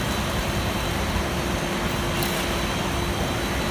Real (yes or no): yes